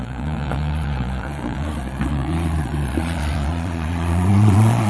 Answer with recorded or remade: remade